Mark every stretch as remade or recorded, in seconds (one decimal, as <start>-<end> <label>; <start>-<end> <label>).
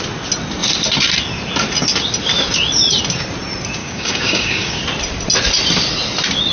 0.0-3.8 recorded; 3.8-4.8 remade; 4.8-6.5 recorded